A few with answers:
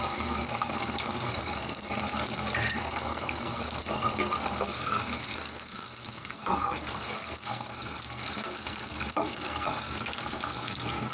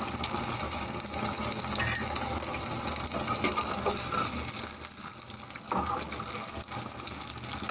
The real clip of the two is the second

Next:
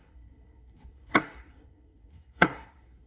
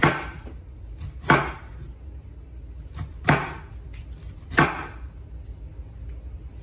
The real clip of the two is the second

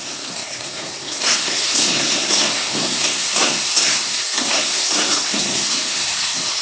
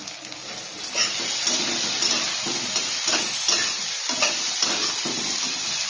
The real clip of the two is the second